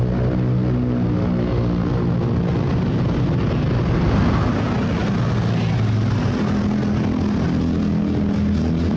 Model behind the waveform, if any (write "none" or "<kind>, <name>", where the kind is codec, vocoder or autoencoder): none